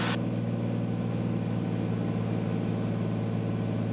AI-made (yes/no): no